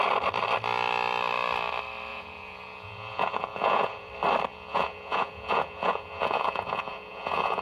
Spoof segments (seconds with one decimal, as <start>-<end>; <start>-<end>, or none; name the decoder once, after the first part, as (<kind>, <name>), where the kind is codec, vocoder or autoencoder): 2.1-4.1 (vocoder, Vocos); 4.5-7.6